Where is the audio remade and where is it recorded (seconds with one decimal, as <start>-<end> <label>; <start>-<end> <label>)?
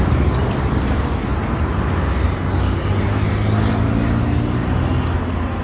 0.0-5.6 recorded